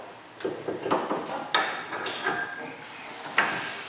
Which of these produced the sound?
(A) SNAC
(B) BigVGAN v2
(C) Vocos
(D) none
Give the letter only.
D